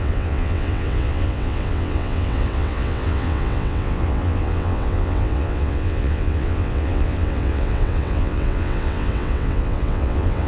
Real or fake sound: fake